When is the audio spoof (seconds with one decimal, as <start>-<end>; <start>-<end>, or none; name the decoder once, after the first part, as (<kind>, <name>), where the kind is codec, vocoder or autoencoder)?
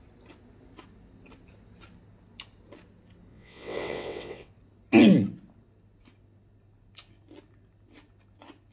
3.3-4.5 (vocoder, WaveNeXt)